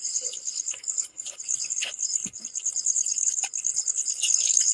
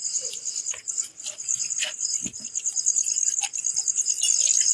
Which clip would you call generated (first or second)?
first